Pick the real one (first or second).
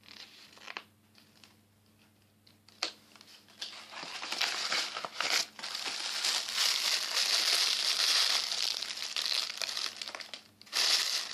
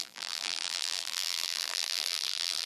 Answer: first